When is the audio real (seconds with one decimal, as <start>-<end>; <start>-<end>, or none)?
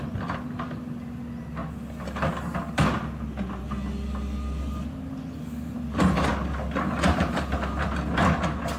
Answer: 0.0-8.8